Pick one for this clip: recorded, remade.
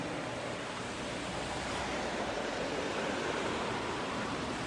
remade